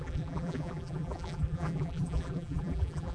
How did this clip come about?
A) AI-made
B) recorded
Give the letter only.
A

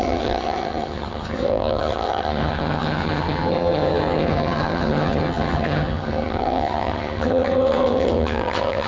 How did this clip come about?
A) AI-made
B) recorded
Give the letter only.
A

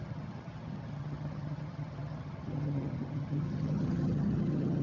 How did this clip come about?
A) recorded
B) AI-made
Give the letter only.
B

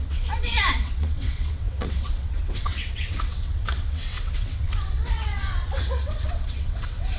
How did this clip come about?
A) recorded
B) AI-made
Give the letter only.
B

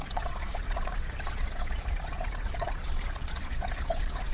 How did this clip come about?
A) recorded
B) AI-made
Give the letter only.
B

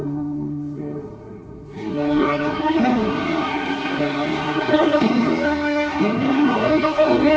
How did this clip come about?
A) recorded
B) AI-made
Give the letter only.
B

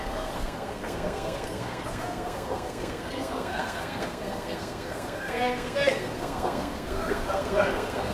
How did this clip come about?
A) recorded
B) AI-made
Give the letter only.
B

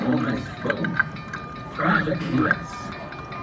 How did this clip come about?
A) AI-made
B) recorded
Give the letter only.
B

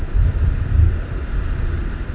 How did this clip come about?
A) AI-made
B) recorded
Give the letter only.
B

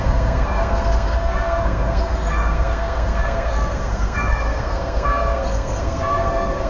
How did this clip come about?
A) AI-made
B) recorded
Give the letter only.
A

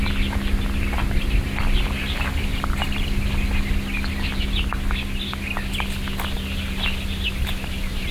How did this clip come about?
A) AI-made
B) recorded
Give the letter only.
B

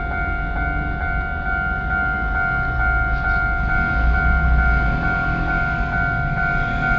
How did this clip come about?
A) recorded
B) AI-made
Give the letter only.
A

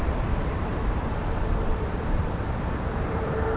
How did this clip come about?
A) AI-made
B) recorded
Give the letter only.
A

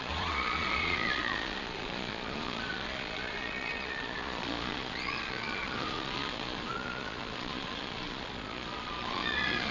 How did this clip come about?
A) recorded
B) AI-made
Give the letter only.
B